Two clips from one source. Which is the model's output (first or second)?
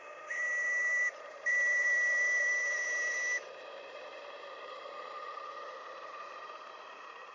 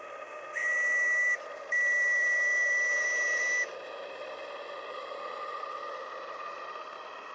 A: first